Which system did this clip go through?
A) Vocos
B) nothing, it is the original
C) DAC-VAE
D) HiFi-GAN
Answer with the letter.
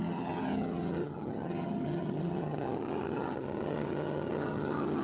D